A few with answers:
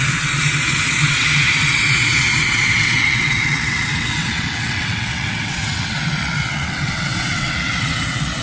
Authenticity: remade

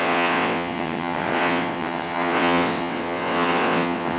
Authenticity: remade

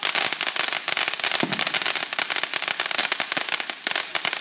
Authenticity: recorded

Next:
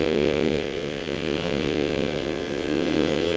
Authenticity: remade